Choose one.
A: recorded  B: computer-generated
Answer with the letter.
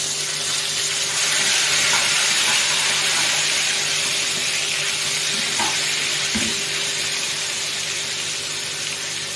A